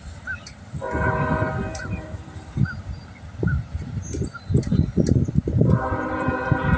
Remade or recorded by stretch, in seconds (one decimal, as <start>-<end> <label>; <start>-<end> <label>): 0.0-1.7 recorded; 1.7-3.0 remade; 3.0-4.6 recorded; 4.6-6.8 remade